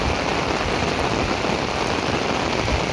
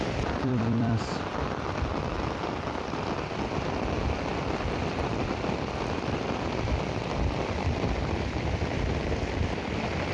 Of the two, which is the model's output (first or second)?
second